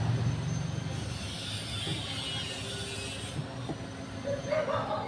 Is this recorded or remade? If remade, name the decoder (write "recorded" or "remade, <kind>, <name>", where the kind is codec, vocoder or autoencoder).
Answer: recorded